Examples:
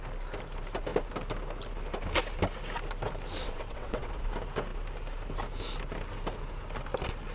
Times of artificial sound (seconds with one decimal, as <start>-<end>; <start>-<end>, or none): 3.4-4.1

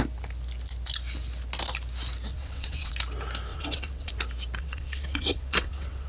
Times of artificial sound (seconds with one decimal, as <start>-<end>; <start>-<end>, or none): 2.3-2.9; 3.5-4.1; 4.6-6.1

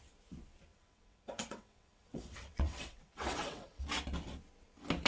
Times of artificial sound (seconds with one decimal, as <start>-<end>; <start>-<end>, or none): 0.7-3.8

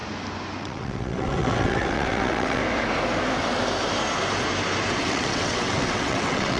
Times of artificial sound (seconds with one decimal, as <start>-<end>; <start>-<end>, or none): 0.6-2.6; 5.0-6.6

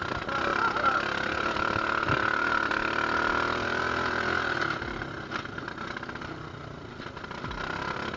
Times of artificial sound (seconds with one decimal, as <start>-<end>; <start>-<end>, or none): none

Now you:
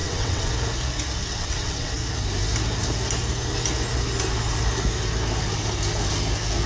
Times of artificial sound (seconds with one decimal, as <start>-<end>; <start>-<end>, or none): 0.0-0.5; 1.2-1.9